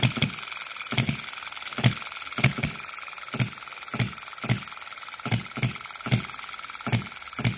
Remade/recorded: recorded